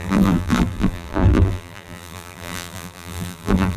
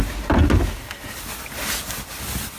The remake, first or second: first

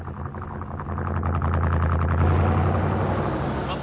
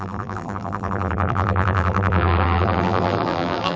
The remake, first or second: second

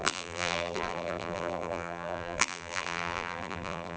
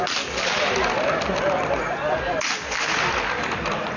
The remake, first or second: first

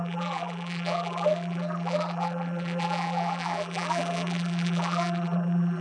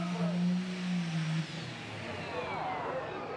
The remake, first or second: first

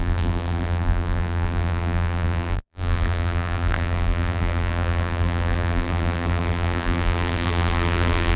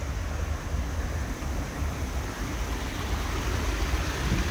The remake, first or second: first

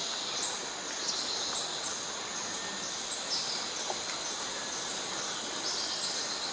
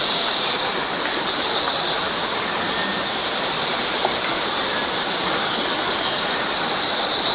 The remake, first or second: second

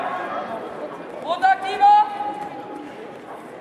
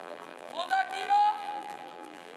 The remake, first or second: second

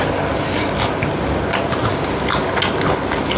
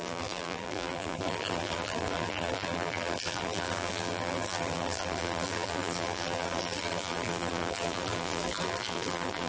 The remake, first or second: second